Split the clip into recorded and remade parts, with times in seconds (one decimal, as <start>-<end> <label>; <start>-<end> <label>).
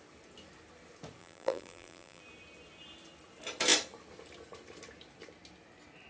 0.0-1.2 recorded; 1.2-2.2 remade; 2.2-6.1 recorded